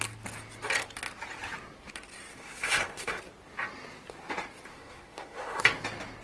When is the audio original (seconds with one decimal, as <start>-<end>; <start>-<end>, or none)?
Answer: 0.0-2.3; 3.2-4.7; 5.6-6.2